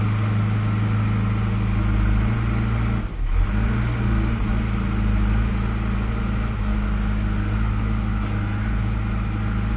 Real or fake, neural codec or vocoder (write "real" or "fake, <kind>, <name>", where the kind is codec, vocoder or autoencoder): real